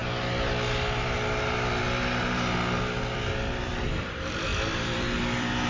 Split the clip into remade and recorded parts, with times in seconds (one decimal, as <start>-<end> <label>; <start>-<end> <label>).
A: 0.0-3.4 recorded; 3.4-5.7 remade